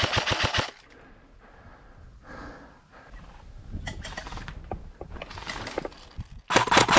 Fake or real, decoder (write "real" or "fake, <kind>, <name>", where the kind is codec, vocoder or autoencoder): real